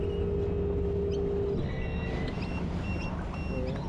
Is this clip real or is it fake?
real